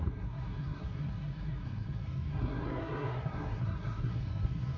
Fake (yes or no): yes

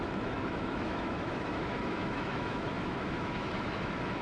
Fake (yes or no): yes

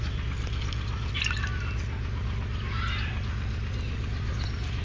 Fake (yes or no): no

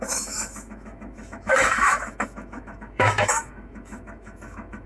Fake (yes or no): yes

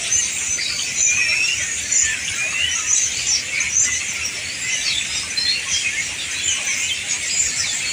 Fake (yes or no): no